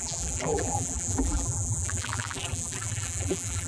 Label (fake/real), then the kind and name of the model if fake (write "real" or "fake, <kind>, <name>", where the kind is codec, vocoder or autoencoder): fake, vocoder, BigVGAN v2